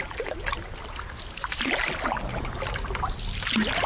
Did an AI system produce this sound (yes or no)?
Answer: no